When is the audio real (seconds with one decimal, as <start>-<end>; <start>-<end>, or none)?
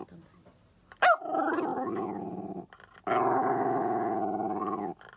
0.0-5.2